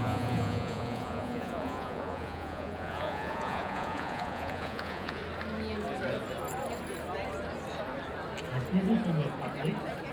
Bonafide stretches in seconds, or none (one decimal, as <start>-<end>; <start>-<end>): 5.2-10.1